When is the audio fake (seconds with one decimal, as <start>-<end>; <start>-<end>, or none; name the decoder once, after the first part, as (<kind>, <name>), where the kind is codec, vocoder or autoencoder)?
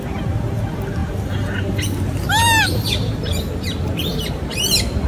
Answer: none